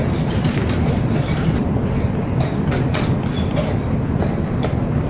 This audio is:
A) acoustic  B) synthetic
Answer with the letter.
A